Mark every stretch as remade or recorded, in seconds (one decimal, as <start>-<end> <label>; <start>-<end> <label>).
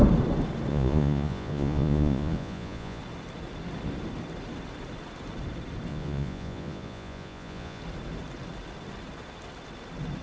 0.0-0.7 recorded; 0.7-3.0 remade; 3.0-5.9 recorded; 5.9-7.8 remade; 7.8-10.2 recorded